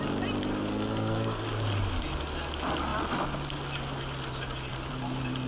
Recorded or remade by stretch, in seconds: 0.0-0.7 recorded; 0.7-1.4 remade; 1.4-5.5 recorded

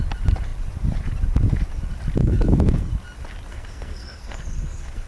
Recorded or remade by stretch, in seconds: 0.0-2.2 recorded; 2.2-2.9 remade; 2.9-3.5 recorded; 3.5-5.1 remade

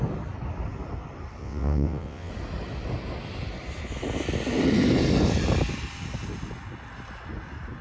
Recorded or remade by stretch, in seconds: 0.0-1.4 recorded; 1.4-2.3 remade; 2.3-7.8 recorded

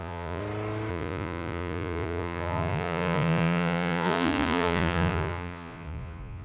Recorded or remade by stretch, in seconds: 0.0-0.4 remade; 0.4-0.9 recorded; 0.9-6.4 remade

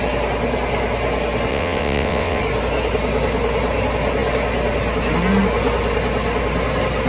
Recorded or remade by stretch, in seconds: 0.0-1.5 recorded; 1.5-2.4 remade; 2.4-7.1 recorded